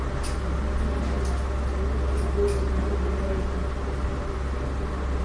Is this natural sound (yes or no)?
yes